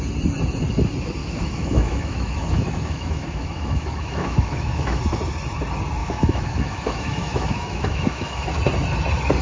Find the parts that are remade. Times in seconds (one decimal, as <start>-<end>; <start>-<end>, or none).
1.2-5.0; 6.0-8.6